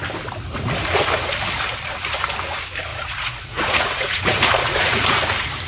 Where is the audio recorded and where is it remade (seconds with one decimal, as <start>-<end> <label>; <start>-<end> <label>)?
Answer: 0.0-2.9 recorded; 2.9-5.2 remade; 5.2-5.7 recorded